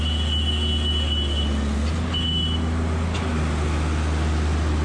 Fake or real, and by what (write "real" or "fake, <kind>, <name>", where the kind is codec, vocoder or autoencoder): real